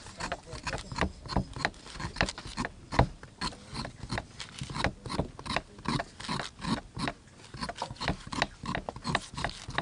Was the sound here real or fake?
real